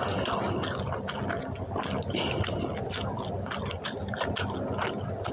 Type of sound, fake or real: real